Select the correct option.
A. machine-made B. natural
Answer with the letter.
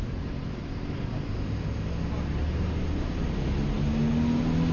B